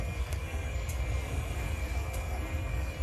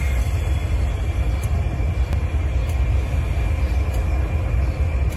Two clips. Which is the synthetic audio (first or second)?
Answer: first